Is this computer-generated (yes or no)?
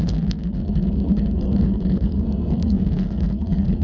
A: yes